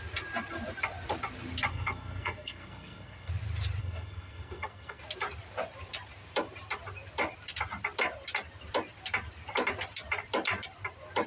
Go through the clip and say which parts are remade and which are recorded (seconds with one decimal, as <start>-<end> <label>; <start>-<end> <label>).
0.0-1.7 recorded; 1.7-3.3 remade; 3.3-3.8 recorded; 3.8-5.0 remade; 5.0-11.3 recorded